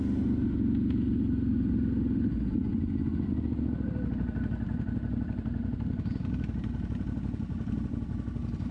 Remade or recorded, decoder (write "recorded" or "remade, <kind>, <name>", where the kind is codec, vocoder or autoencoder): recorded